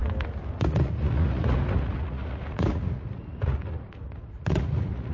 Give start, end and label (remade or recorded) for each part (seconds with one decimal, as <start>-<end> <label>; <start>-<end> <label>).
0.0-0.6 recorded; 0.6-5.1 remade